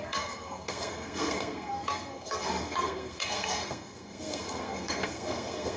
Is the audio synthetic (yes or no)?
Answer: yes